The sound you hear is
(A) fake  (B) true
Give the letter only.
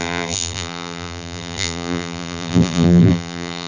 A